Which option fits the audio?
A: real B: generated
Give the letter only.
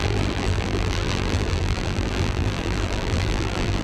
B